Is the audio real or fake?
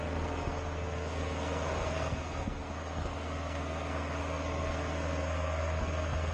fake